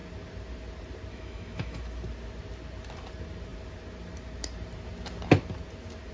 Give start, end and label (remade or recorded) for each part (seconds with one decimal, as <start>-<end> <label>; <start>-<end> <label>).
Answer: 0.0-1.1 recorded; 1.1-1.8 remade; 1.8-6.1 recorded

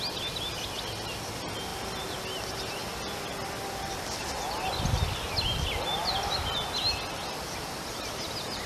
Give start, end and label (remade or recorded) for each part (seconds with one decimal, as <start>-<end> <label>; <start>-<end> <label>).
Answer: 0.0-8.7 recorded